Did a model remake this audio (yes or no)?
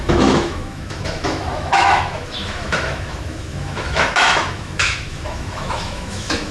yes